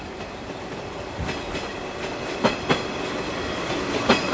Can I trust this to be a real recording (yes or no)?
yes